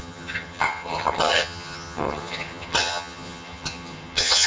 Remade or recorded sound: remade